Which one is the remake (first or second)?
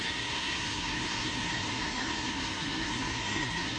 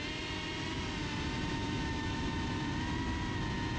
first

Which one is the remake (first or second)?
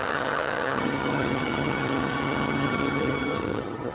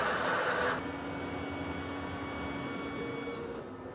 first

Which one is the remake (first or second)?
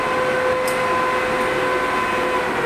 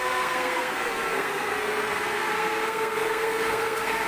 second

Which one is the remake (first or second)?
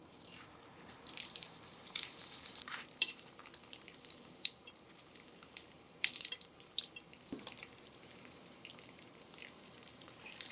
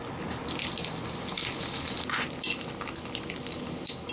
first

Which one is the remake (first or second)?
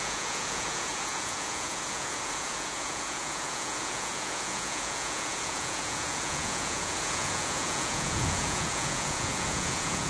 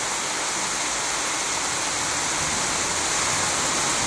first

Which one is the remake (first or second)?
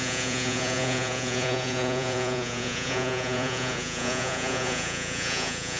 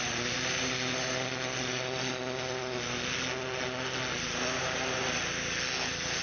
first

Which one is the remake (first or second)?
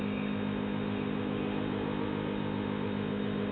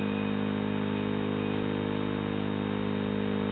first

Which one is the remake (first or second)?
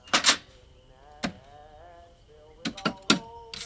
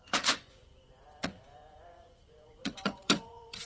second